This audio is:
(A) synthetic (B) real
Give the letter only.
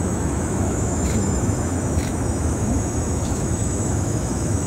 A